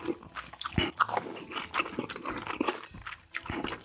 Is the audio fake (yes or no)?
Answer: no